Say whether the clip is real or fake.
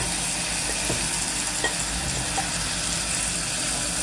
real